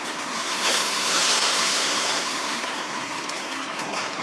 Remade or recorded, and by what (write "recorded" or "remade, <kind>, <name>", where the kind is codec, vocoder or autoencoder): remade, codec, SNAC